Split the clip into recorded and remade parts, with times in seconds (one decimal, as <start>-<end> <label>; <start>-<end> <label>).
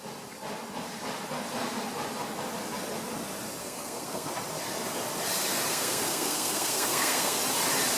0.0-3.6 recorded; 3.6-4.3 remade; 4.3-5.7 recorded; 5.7-7.4 remade; 7.4-8.0 recorded